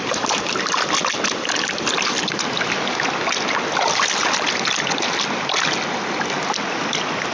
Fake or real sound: real